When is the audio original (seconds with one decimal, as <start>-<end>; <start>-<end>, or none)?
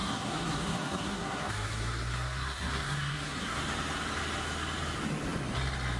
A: 3.6-6.0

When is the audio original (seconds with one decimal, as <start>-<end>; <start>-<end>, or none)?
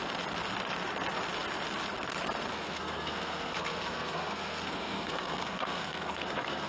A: 0.0-2.5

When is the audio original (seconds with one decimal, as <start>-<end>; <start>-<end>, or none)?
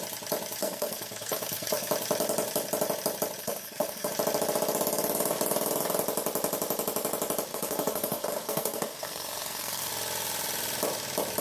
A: 0.0-0.6; 1.9-3.4; 4.1-7.5; 9.9-11.4